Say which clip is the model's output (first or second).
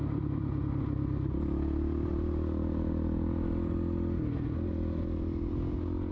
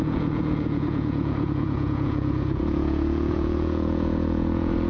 second